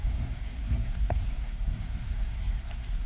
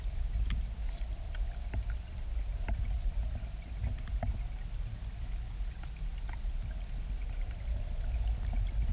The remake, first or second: first